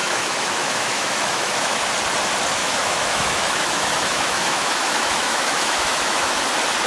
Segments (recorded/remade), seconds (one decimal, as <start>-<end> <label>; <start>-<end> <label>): 0.0-1.8 remade; 1.8-2.6 recorded; 2.6-6.4 remade; 6.4-6.9 recorded